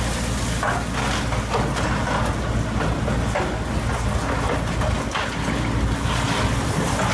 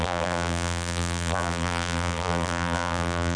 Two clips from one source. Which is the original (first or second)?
first